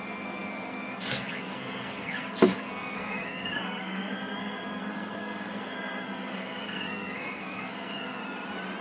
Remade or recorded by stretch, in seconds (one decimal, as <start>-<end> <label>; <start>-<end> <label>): 0.0-8.2 remade; 8.2-8.8 recorded